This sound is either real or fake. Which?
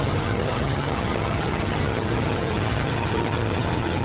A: fake